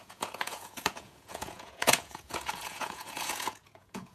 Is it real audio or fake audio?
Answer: fake